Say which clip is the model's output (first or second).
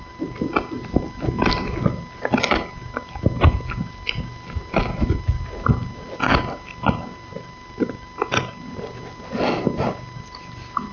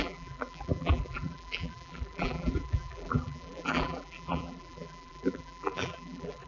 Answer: second